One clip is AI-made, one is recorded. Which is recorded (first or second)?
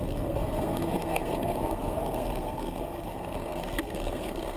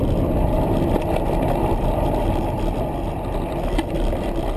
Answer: second